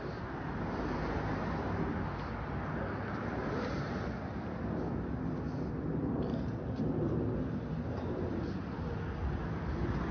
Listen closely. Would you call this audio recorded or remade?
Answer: recorded